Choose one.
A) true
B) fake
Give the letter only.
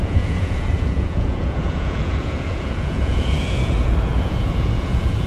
B